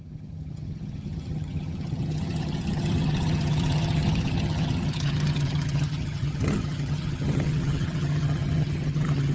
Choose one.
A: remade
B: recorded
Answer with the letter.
A